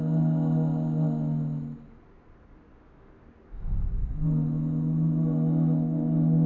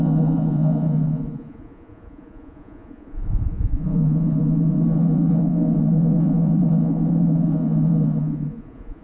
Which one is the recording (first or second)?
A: first